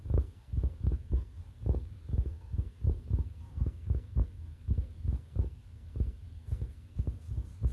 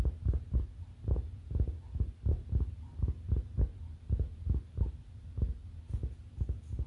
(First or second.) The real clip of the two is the second